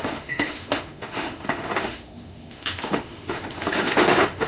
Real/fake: fake